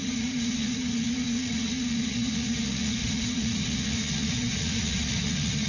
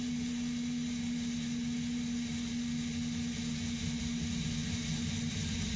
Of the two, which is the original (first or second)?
second